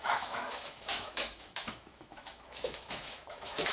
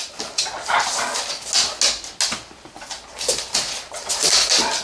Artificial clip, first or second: first